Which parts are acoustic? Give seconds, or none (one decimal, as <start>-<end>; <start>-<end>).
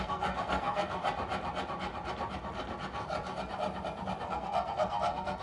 1.0-4.2